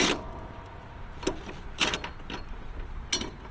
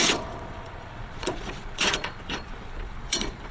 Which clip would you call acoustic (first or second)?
first